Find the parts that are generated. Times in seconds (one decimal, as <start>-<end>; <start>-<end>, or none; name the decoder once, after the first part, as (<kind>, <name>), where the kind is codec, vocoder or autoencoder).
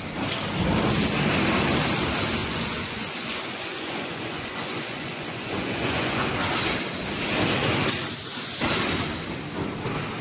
2.4-6.3 (vocoder, Vocos)